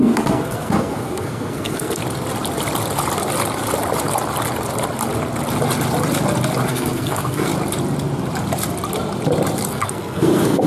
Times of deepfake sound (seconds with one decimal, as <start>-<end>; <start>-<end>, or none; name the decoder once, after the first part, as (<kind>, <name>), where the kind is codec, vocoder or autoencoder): 0.0-2.0 (codec, SNAC); 6.7-7.5; 9.7-10.7